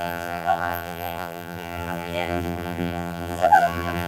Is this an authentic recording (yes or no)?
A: no